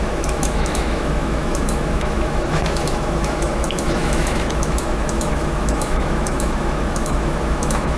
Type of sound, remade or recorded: remade